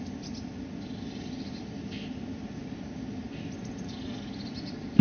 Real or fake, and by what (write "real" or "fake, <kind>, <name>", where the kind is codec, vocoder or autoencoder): real